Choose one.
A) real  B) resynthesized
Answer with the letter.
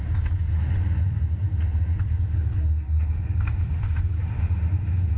A